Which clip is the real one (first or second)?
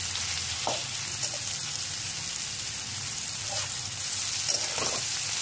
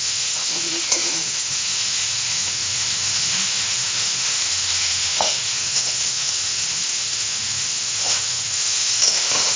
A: first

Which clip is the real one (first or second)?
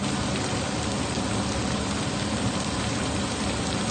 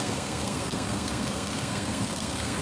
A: first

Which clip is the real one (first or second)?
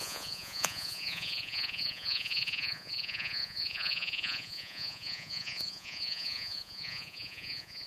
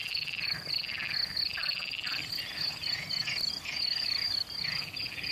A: second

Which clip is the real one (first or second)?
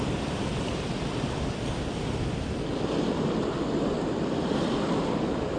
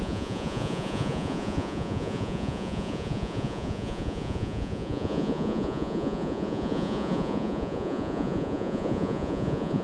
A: first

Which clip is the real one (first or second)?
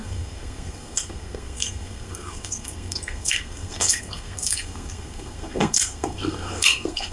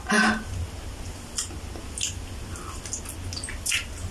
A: second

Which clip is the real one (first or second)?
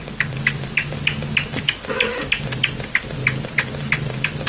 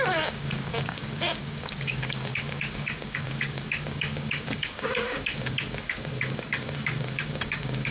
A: first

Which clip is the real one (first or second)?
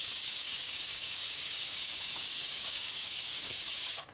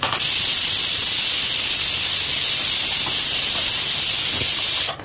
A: second